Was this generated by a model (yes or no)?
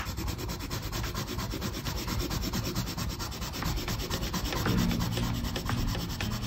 no